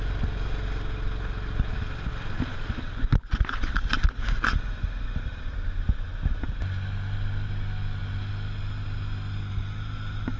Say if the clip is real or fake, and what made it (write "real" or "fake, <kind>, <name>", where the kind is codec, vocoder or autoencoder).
real